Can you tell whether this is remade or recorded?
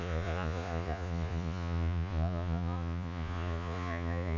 remade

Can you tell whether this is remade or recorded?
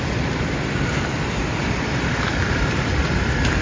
recorded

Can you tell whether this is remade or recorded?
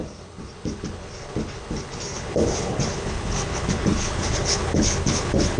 remade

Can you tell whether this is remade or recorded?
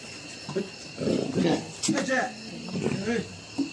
recorded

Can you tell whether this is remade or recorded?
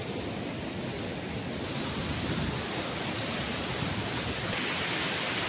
recorded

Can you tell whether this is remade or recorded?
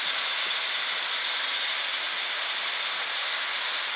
recorded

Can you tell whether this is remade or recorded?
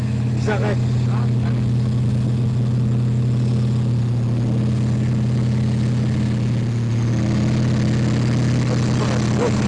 recorded